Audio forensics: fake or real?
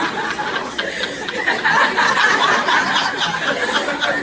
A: real